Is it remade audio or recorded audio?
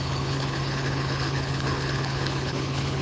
remade